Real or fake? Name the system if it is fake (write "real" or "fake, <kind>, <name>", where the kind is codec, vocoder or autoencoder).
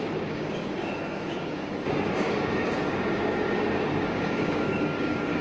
fake, codec, DAC